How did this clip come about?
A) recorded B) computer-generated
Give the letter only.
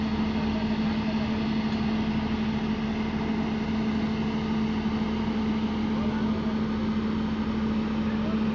A